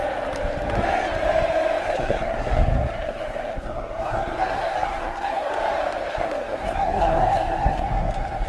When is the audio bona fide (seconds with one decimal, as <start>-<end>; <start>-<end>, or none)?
0.0-1.8; 5.5-6.1